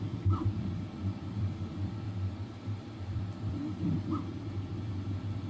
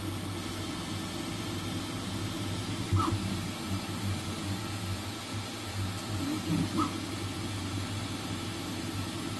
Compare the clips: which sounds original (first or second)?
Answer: second